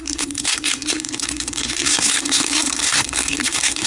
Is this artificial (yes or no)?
yes